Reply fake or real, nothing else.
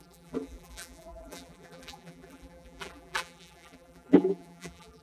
fake